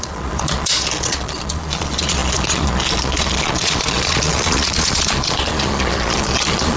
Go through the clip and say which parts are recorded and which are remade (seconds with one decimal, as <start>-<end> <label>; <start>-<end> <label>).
0.0-6.8 remade